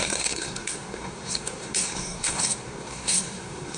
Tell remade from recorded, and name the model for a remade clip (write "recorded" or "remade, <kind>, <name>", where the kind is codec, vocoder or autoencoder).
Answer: remade, codec, SNAC